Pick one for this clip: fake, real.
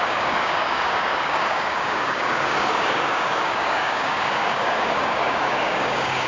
fake